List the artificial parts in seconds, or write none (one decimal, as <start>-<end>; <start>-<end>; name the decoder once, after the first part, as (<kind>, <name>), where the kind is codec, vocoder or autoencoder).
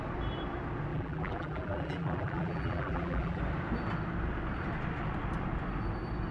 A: 0.9-3.4 (vocoder, BigVGAN v2)